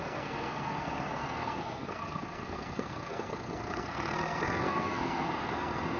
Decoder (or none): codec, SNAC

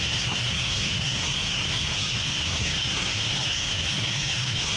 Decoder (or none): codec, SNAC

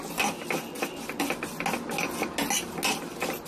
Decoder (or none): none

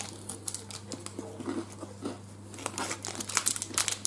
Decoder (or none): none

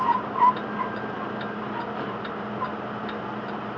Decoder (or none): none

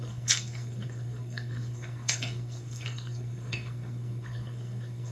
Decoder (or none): codec, SNAC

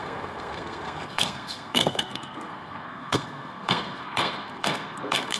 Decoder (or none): codec, SNAC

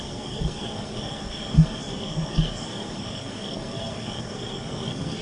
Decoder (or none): codec, SNAC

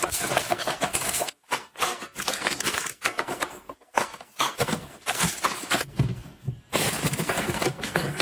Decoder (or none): codec, SNAC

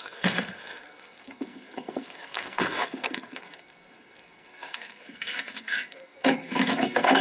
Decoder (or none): codec, SNAC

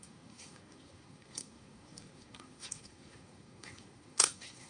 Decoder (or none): codec, SNAC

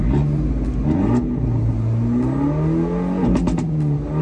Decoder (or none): none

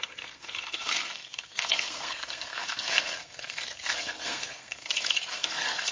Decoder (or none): codec, SNAC